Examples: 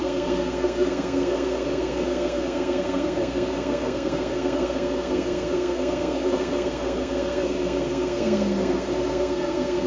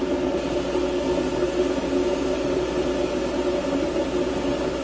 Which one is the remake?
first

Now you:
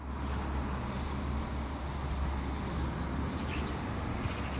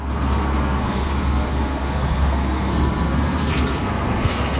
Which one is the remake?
second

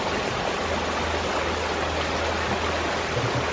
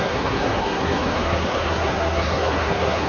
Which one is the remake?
second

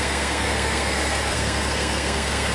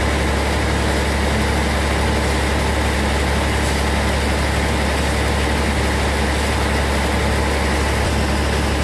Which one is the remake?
first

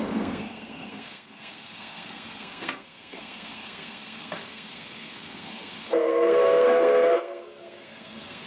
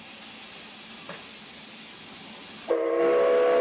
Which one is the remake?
first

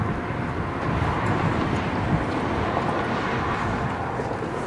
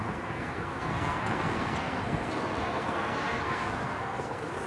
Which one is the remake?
second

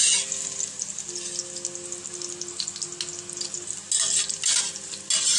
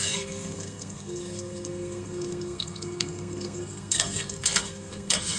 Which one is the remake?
second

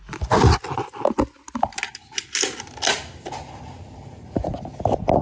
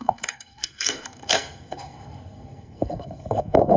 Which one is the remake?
second